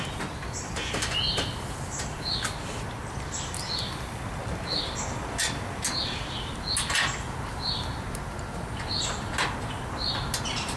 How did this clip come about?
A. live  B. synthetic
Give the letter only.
A